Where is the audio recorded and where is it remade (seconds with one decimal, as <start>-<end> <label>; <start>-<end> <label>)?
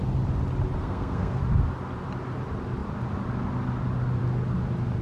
0.0-0.8 recorded; 0.8-1.4 remade; 1.4-5.0 recorded